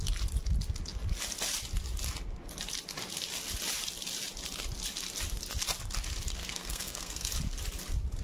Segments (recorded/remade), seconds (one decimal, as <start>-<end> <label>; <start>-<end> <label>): 0.0-6.4 recorded; 6.4-7.3 remade; 7.3-8.2 recorded